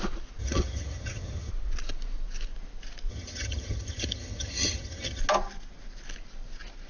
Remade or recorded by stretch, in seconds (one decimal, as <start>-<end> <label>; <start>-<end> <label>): 0.0-0.4 recorded; 0.4-1.5 remade; 1.5-3.1 recorded; 3.1-5.2 remade; 5.2-6.9 recorded